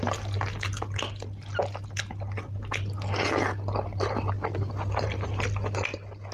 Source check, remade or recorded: recorded